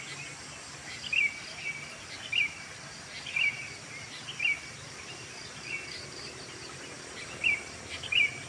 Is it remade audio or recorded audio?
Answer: recorded